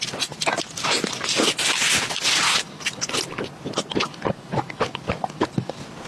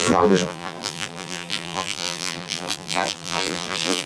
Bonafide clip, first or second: first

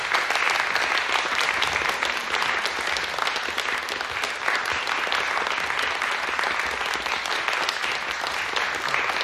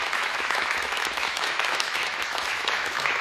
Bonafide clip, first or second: first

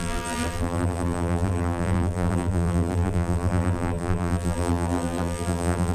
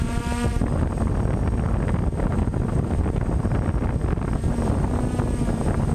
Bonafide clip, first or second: second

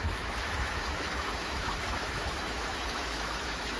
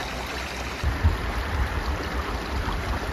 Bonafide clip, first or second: second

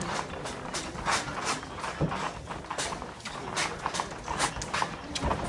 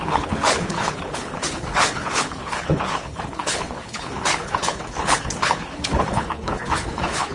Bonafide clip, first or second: first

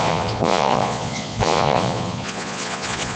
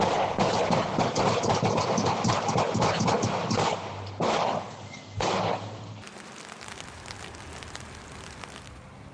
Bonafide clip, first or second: second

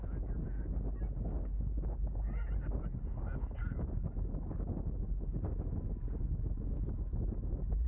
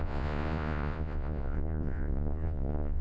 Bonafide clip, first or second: first